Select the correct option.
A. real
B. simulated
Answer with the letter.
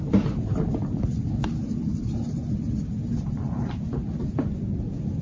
A